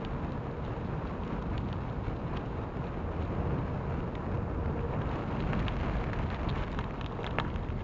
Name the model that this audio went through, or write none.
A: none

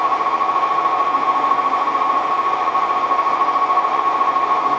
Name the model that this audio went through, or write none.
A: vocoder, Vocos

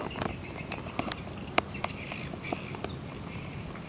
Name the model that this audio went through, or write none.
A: none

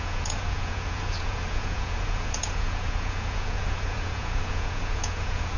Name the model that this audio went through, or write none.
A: vocoder, Vocos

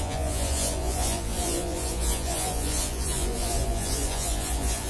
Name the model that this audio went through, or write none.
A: vocoder, Vocos